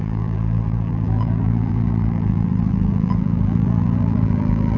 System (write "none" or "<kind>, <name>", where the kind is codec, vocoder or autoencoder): vocoder, BigVGAN v2